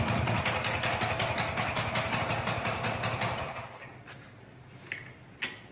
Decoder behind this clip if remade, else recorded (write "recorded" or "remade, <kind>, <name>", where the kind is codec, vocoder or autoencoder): recorded